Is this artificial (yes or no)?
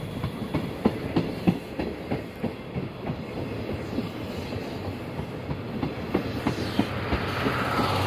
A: no